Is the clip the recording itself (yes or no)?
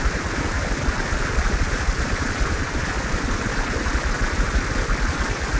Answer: yes